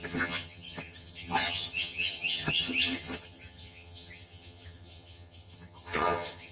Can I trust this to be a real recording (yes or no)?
no